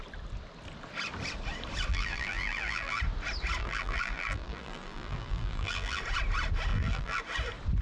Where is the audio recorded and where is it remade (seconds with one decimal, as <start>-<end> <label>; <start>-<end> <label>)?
0.0-1.9 recorded; 1.9-3.0 remade; 3.0-3.6 recorded; 3.6-6.0 remade; 6.0-6.7 recorded; 6.7-7.2 remade; 7.2-7.8 recorded